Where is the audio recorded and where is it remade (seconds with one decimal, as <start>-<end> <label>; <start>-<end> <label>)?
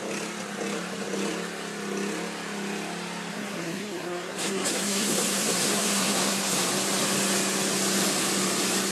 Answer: 0.0-3.3 recorded; 3.3-6.7 remade; 6.7-8.9 recorded